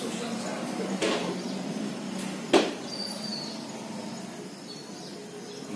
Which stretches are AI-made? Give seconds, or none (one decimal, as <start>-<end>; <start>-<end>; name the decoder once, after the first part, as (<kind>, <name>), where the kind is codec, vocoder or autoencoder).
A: 0.5-1.9 (vocoder, BigVGAN v2)